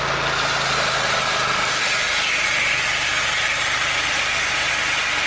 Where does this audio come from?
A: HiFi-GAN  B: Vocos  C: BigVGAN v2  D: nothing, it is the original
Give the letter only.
D